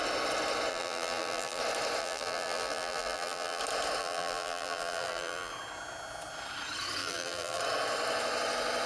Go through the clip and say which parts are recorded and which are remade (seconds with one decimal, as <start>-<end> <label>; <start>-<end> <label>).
0.0-0.7 recorded; 0.7-1.6 remade; 1.6-2.0 recorded; 2.0-3.6 remade; 3.6-4.0 recorded; 4.0-5.5 remade; 5.5-7.0 recorded; 7.0-7.6 remade; 7.6-8.9 recorded